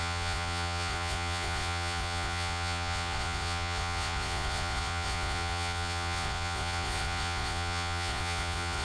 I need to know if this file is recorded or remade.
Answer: remade